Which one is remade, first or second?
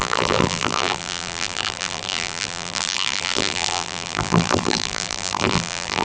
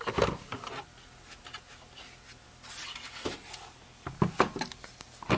first